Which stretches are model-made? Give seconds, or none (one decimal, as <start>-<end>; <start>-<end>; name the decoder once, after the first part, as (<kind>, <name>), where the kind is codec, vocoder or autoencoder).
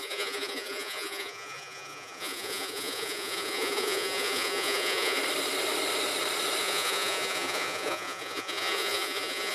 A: 0.0-5.2 (vocoder, Vocos); 6.6-9.5